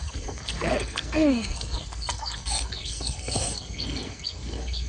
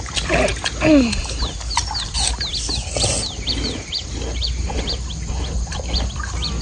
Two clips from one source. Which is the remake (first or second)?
first